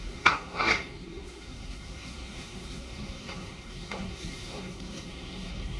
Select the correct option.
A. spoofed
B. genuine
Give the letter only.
A